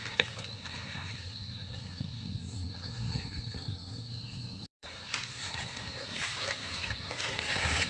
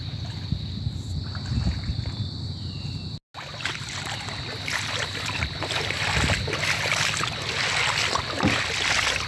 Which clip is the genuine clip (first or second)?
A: second